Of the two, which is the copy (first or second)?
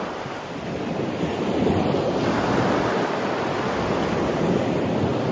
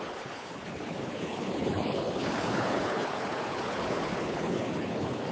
second